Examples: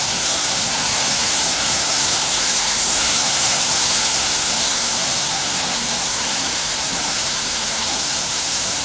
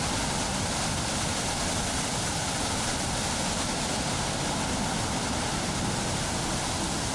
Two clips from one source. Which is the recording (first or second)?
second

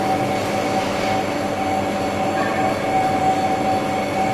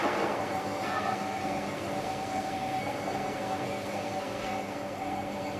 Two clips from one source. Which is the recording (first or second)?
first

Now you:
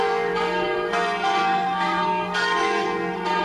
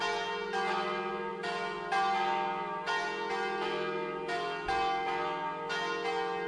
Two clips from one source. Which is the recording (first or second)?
second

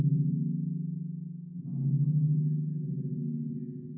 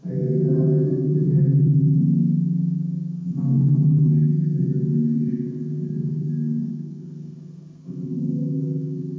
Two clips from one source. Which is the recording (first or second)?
first